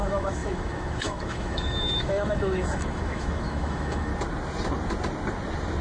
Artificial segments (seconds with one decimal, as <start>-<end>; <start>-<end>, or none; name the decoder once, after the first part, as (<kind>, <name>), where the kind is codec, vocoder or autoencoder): 0.0-4.1 (autoencoder, DAC-VAE)